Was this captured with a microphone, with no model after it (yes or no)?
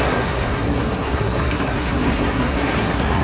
no